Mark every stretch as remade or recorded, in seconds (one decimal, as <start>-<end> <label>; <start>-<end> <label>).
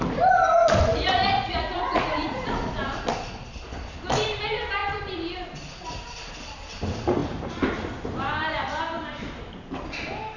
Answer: 0.0-0.9 recorded; 0.9-3.0 remade; 3.0-10.4 recorded